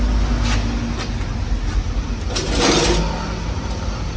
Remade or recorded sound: recorded